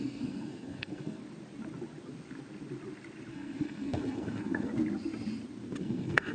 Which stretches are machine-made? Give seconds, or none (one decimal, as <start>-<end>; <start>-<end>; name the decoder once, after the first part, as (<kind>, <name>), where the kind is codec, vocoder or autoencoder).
0.0-1.2 (codec, SNAC); 3.3-4.7; 5.8-6.3